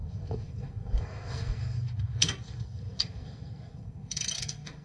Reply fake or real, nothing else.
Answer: fake